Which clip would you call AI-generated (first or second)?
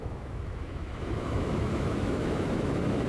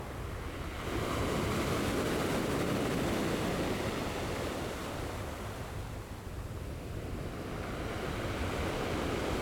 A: first